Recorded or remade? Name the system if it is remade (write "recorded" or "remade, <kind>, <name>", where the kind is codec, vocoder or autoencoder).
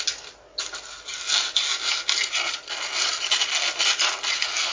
recorded